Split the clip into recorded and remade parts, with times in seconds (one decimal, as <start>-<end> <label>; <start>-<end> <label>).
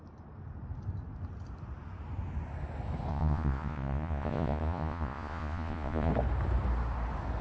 0.0-3.1 recorded; 3.1-6.1 remade; 6.1-7.4 recorded